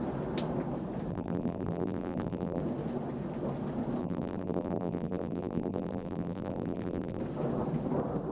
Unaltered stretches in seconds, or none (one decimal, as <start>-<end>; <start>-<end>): 0.0-1.1; 2.6-4.0; 7.2-8.3